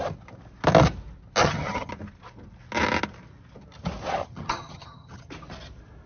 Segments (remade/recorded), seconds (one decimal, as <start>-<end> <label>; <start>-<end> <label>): 0.0-1.4 recorded; 1.4-1.9 remade; 1.9-4.2 recorded; 4.2-5.3 remade; 5.3-6.1 recorded